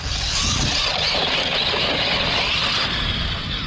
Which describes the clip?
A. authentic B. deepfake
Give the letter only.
A